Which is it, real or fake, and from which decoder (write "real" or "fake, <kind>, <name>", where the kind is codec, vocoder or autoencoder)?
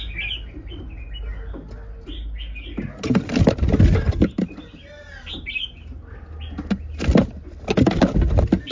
real